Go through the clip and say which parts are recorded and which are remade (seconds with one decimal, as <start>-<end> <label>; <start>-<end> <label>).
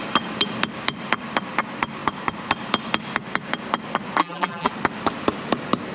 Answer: 0.0-4.2 recorded; 4.2-4.7 remade; 4.7-5.9 recorded